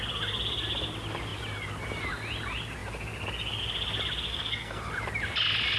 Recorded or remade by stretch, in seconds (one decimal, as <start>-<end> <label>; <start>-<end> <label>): 0.0-4.3 recorded; 4.3-4.9 remade; 4.9-5.8 recorded